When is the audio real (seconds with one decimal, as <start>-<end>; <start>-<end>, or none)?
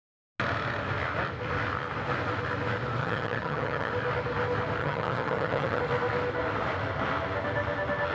0.0-3.0; 3.9-4.8; 5.8-8.1